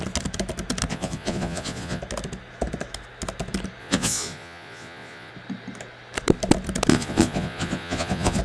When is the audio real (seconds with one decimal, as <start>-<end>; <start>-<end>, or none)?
0.0-0.9; 2.0-3.8; 5.3-6.9